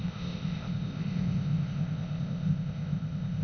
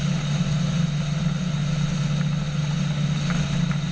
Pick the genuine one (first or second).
second